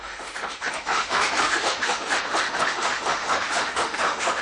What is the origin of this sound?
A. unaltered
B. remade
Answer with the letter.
B